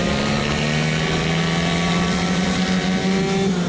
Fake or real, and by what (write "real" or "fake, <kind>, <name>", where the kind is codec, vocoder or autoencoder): real